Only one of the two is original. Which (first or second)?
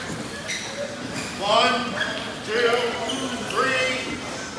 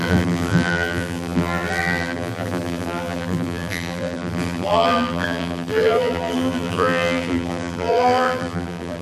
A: first